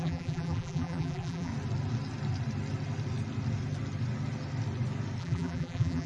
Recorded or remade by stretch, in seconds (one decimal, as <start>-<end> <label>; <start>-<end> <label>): 0.0-1.5 remade; 1.5-5.2 recorded; 5.2-6.1 remade